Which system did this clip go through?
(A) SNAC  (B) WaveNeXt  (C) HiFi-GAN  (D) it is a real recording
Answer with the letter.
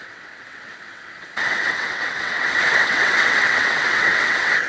B